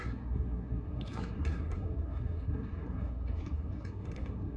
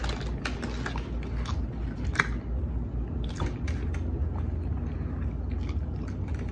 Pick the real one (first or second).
second